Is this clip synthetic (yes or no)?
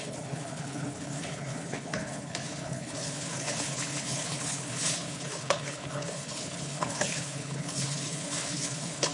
yes